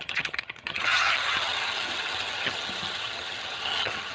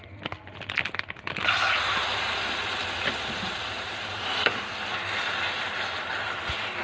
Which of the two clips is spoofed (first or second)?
first